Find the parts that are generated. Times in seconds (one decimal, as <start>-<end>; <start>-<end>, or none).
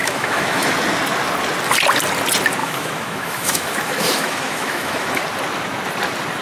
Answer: 0.0-0.7; 2.6-5.2